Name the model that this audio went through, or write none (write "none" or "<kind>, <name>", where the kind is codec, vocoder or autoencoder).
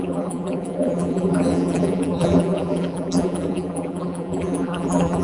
vocoder, BigVGAN v2